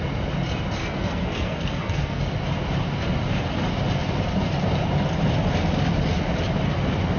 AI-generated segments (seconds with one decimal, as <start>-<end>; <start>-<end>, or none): 0.8-2.2